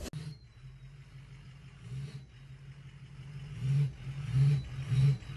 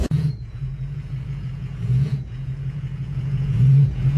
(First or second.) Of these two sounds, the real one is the first